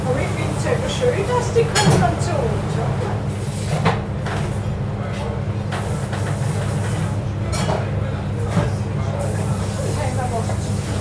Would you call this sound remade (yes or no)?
no